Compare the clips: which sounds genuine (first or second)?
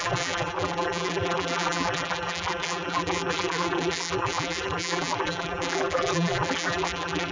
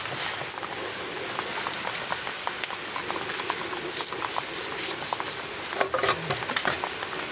second